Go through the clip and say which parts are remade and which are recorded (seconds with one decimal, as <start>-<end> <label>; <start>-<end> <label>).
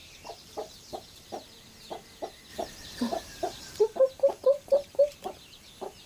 0.0-1.3 remade; 1.3-2.5 recorded; 2.5-3.8 remade; 3.8-4.4 recorded; 4.4-5.6 remade; 5.6-6.1 recorded